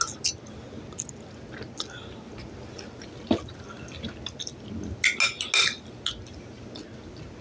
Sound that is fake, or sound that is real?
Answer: real